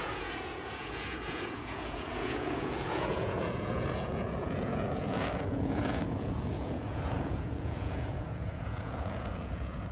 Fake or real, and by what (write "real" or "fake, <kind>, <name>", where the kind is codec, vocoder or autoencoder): fake, vocoder, Vocos